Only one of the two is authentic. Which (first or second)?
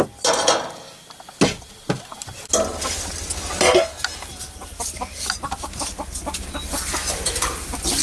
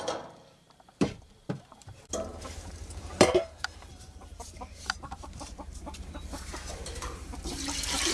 first